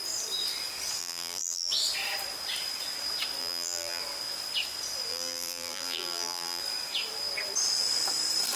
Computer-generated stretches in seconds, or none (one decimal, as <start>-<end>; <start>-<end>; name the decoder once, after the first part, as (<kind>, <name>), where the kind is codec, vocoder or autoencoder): 1.0-1.7 (vocoder, BigVGAN v2); 3.4-4.0; 5.1-6.6

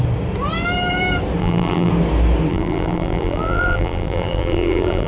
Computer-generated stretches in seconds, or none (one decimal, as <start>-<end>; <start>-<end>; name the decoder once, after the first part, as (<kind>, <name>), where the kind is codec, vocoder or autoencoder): 1.4-1.9 (vocoder, BigVGAN v2); 2.5-5.1

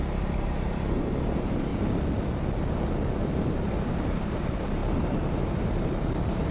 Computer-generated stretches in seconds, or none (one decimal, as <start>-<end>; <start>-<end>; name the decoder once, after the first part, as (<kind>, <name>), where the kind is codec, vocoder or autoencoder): 0.0-1.7 (vocoder, BigVGAN v2); 3.3-6.5

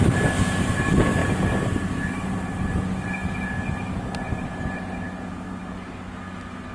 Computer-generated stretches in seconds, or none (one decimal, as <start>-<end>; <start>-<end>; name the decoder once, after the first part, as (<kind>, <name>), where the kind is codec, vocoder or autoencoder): 1.2-2.8 (vocoder, BigVGAN v2)